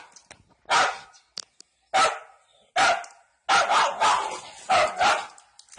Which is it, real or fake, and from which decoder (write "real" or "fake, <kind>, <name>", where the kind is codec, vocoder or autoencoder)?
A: real